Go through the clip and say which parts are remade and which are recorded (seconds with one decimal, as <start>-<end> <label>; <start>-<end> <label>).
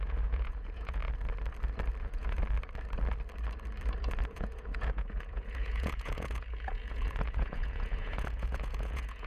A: 0.0-1.0 remade; 1.0-2.0 recorded; 2.0-2.4 remade; 2.4-4.3 recorded; 4.3-9.3 remade